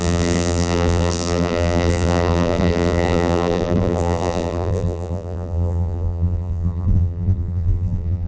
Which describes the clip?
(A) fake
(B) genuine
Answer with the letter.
A